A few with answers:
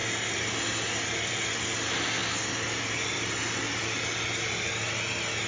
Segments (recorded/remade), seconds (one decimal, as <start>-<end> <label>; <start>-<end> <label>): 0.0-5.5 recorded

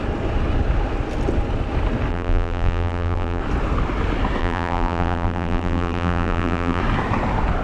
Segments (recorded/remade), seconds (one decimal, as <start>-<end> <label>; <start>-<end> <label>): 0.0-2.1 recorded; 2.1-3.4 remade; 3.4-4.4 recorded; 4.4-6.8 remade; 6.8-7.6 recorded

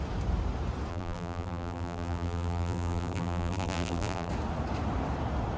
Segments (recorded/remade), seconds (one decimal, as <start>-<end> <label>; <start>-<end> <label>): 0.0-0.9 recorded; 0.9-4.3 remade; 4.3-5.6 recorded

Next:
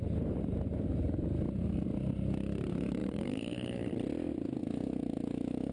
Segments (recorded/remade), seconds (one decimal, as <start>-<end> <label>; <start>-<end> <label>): 0.0-3.0 recorded; 3.0-3.9 remade; 3.9-4.6 recorded; 4.6-5.7 remade

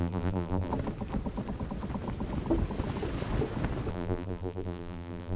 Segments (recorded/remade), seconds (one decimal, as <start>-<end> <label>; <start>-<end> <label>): 0.0-0.7 remade; 0.7-3.9 recorded; 3.9-5.4 remade

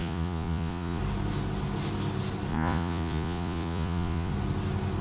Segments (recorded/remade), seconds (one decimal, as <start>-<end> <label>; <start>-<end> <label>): 0.0-1.0 remade; 1.0-2.5 recorded; 2.5-4.3 remade; 4.3-5.0 recorded

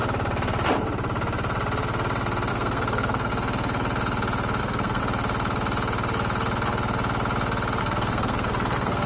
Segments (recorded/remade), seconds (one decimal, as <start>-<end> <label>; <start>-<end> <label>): 0.0-2.5 recorded; 2.5-3.3 remade; 3.3-4.6 recorded; 4.6-5.0 remade; 5.0-7.8 recorded; 7.8-9.1 remade

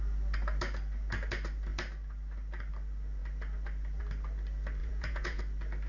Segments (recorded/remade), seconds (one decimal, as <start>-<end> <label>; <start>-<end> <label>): 0.0-4.8 recorded; 4.8-5.4 remade; 5.4-5.9 recorded